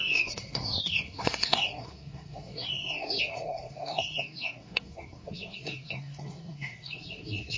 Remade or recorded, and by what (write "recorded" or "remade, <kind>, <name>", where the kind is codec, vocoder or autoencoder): remade, codec, SNAC